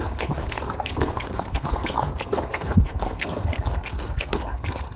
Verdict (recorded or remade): remade